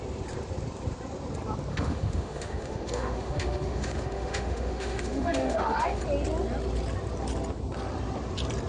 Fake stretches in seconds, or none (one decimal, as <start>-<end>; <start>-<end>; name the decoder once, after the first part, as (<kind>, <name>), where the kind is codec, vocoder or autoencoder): 1.7-6.0 (autoencoder, DAC-VAE)